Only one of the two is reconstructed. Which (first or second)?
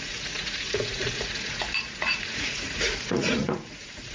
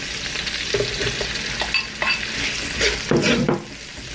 first